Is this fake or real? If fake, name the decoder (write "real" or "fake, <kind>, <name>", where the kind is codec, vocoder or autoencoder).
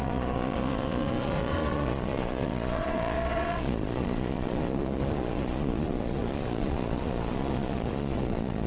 fake, vocoder, Vocos